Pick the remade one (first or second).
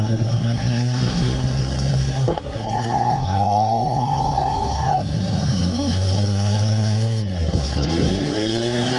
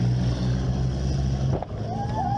first